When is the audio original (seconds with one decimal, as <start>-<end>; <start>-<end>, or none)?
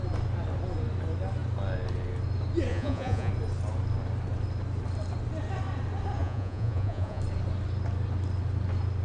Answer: 0.0-2.7; 3.3-6.2; 7.2-9.0